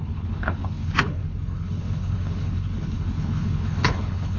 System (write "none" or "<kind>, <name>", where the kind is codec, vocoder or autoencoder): codec, HILCodec